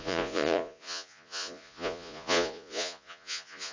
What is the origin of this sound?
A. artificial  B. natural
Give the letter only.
A